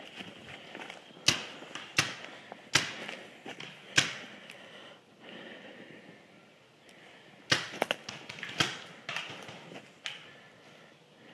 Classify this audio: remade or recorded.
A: recorded